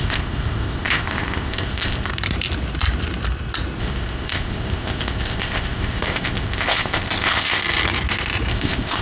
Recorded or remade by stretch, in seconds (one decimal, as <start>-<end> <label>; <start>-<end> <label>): 0.0-2.1 remade; 2.1-3.8 recorded; 3.8-7.6 remade; 7.6-8.5 recorded; 8.5-9.0 remade